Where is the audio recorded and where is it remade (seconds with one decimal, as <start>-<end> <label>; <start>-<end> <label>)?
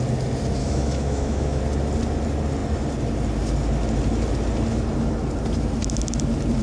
0.0-0.6 recorded; 0.6-1.6 remade; 1.6-6.6 recorded